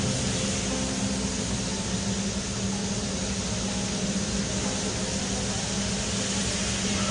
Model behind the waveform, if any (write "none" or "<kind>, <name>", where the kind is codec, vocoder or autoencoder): none